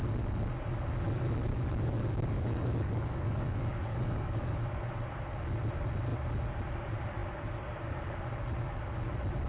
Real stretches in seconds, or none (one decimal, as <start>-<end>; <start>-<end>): 0.0-1.5; 4.5-9.5